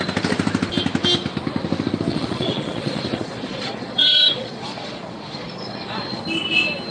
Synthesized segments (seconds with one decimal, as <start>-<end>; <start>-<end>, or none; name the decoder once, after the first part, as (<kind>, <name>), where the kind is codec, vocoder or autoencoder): 2.1-6.2 (vocoder, Vocos)